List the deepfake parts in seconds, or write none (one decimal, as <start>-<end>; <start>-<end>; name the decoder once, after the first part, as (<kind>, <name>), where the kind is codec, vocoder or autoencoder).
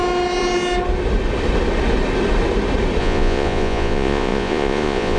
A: 3.0-5.2 (vocoder, Vocos)